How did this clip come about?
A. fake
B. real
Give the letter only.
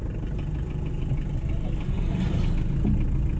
B